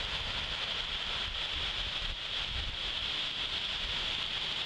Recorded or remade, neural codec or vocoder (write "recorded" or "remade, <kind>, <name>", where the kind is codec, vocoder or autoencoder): recorded